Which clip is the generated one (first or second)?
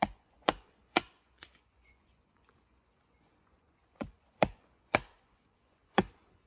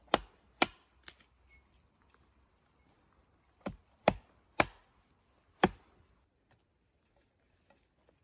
first